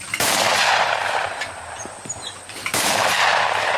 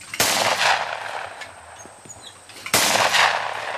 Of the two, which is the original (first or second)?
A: second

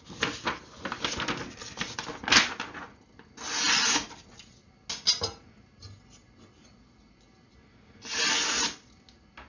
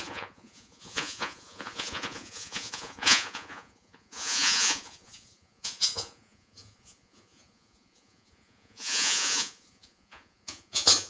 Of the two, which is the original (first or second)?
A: first